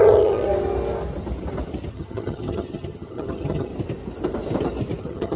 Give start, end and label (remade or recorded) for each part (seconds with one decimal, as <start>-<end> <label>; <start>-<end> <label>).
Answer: 0.0-0.5 remade; 0.5-1.9 recorded; 1.9-3.7 remade; 3.7-5.0 recorded; 5.0-5.4 remade